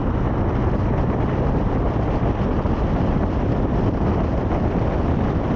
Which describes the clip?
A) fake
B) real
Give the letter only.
A